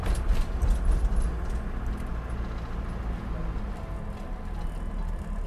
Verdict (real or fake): real